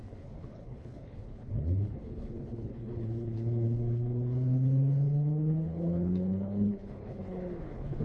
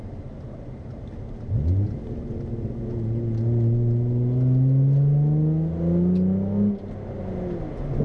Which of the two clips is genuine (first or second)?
second